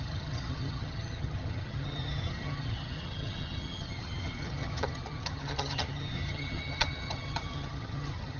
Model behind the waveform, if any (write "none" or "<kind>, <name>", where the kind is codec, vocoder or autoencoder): vocoder, HiFi-GAN